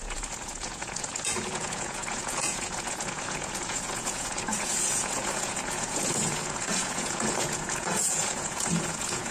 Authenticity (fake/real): fake